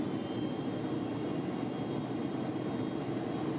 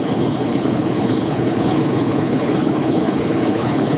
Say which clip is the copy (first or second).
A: second